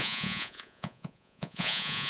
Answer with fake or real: fake